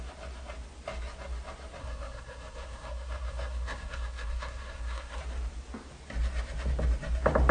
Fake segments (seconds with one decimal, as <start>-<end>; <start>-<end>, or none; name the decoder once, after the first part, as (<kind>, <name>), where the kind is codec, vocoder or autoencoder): 1.8-5.2 (codec, SNAC)